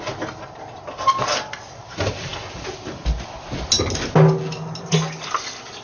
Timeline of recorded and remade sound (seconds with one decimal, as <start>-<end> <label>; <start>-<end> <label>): 0.0-5.8 recorded

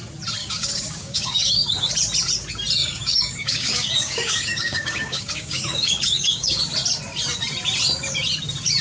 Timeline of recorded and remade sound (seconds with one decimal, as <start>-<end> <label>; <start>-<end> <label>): 0.0-0.4 recorded; 0.4-1.9 remade; 1.9-2.8 recorded; 2.8-6.6 remade; 6.6-8.8 recorded

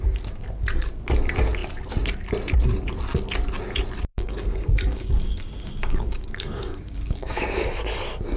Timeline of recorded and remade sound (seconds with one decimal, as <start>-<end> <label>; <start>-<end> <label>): 0.0-4.1 recorded; 4.1-7.7 remade; 7.7-8.4 recorded